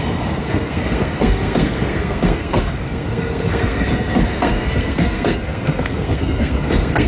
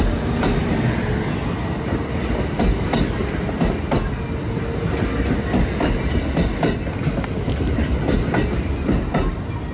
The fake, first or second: first